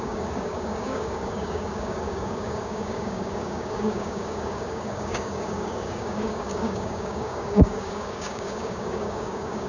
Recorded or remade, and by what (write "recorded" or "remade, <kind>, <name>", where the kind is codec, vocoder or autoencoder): remade, codec, DAC